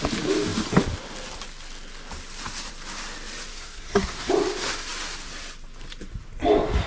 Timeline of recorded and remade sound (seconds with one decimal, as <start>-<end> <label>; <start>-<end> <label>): 0.0-3.5 recorded; 3.5-4.3 remade; 4.3-6.9 recorded

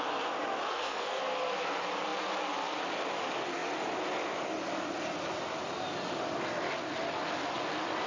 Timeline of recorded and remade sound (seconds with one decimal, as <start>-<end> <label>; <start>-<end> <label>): 0.0-0.7 recorded; 0.7-1.2 remade; 1.2-8.1 recorded

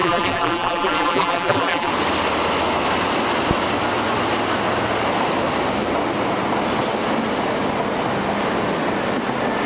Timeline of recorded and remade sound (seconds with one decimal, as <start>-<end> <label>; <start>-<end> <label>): 0.0-1.9 remade; 1.9-9.7 recorded

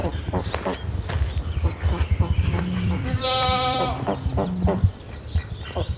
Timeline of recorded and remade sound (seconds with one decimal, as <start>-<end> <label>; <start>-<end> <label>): 0.0-1.4 recorded; 1.4-4.3 remade; 4.3-4.9 recorded; 4.9-6.0 remade

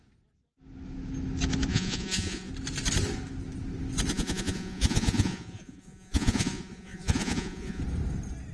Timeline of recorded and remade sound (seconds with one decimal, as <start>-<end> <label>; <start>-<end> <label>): 0.0-1.7 recorded; 1.7-2.5 remade; 2.5-4.1 recorded; 4.1-7.8 remade; 7.8-8.5 recorded

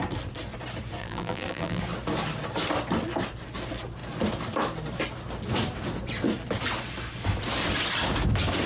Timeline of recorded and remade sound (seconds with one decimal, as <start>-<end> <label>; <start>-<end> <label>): 0.0-1.0 recorded; 1.0-1.8 remade; 1.8-8.7 recorded

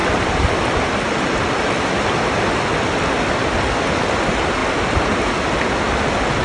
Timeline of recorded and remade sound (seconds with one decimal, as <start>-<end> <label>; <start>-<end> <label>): 0.0-3.8 remade; 3.8-6.4 recorded